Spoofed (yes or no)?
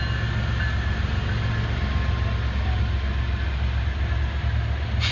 no